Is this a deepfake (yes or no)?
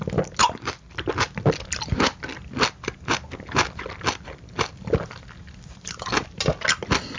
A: no